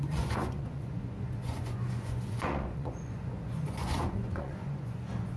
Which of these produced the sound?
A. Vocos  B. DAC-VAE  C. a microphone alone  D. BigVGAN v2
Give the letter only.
A